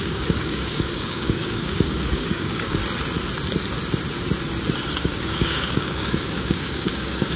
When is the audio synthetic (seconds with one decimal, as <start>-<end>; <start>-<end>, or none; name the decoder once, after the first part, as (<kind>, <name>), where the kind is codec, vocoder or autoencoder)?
0.0-2.8 (codec, DAC); 5.0-7.4